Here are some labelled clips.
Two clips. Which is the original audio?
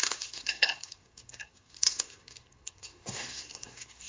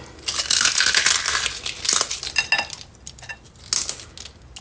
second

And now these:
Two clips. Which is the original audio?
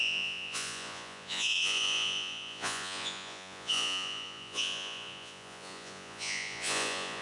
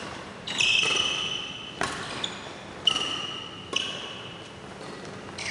second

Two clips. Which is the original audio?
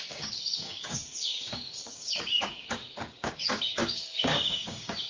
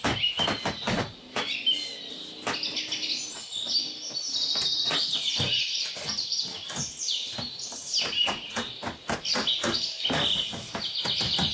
second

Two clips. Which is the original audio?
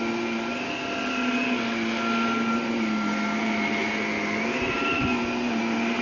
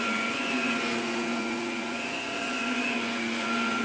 first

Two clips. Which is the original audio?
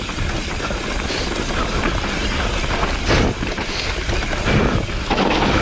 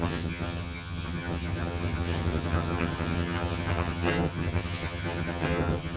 first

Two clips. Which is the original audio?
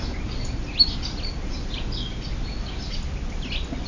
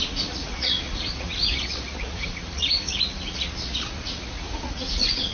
first